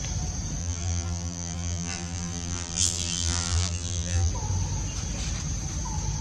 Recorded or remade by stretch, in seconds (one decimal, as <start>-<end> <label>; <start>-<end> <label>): 0.0-0.6 recorded; 0.6-4.3 remade; 4.3-6.2 recorded